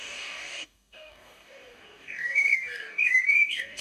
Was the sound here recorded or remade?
remade